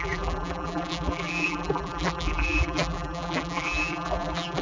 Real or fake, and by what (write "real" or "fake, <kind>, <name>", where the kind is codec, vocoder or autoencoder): fake, vocoder, BigVGAN v2